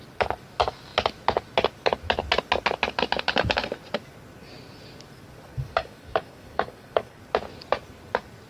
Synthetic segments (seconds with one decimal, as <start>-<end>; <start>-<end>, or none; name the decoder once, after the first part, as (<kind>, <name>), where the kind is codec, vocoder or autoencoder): 5.5-7.2 (codec, DAC)